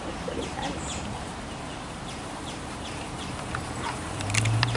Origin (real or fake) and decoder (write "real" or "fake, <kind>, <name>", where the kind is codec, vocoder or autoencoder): fake, vocoder, BigVGAN v2